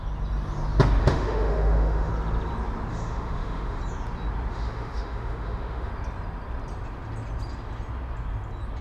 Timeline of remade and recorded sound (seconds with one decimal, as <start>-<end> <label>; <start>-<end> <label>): 0.0-1.0 recorded; 1.0-2.1 remade; 2.1-2.9 recorded; 2.9-3.8 remade; 3.8-4.5 recorded; 4.5-5.9 remade; 5.9-8.8 recorded